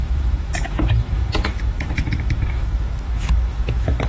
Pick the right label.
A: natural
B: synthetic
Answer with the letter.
B